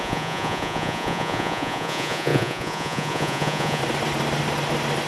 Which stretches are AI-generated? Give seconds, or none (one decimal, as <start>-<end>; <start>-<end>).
0.0-3.8